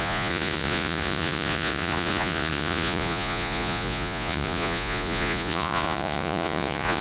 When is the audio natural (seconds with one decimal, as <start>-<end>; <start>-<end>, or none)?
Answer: none